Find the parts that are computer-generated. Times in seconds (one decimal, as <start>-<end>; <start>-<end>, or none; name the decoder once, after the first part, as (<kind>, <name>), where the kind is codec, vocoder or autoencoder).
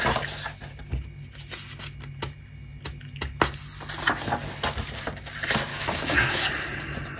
5.7-6.5 (codec, DAC)